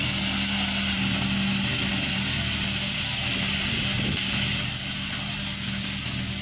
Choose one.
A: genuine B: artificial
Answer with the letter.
A